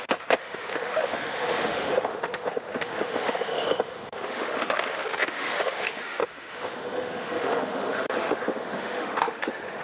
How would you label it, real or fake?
fake